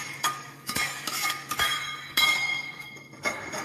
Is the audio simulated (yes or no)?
yes